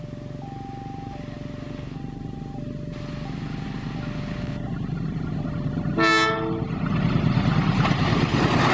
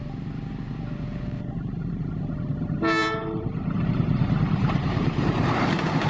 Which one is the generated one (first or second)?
second